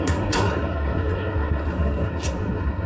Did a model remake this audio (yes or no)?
yes